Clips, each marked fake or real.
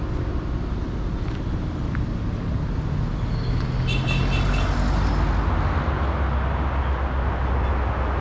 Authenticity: real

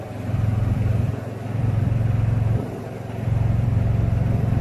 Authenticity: fake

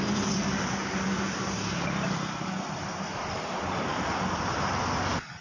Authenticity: real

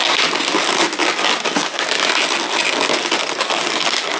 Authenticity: real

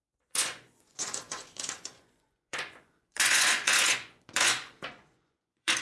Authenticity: fake